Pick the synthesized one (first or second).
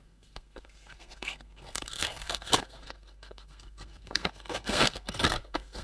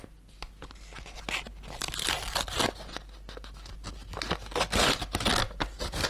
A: first